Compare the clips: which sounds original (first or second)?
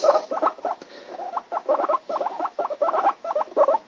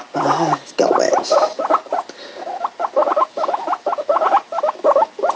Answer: second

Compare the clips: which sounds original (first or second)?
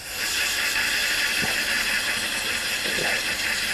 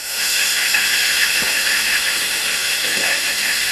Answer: first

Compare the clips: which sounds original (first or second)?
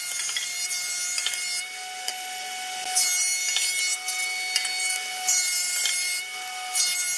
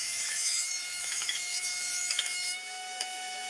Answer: first